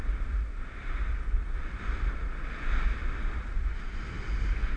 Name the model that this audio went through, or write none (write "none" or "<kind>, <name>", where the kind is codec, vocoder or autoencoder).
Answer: none